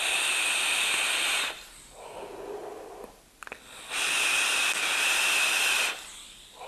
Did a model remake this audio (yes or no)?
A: no